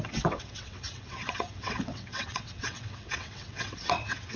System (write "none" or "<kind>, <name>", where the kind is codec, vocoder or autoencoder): vocoder, WaveNeXt